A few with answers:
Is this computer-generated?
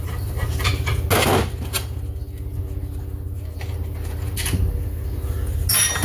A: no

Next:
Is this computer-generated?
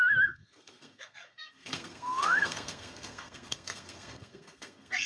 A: yes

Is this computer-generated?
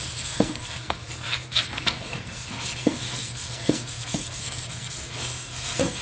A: yes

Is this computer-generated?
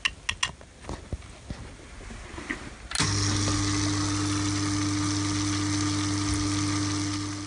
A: no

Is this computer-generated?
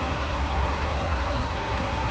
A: yes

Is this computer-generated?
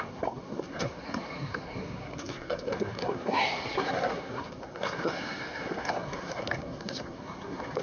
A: yes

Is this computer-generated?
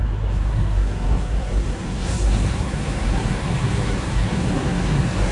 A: yes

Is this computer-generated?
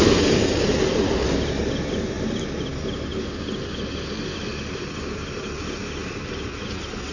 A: no